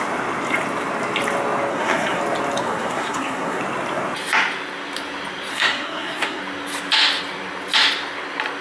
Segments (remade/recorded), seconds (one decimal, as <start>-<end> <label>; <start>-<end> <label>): 0.0-1.7 recorded; 1.7-2.2 remade; 2.2-2.6 recorded; 2.6-3.6 remade; 3.6-5.5 recorded; 5.5-6.4 remade; 6.4-8.6 recorded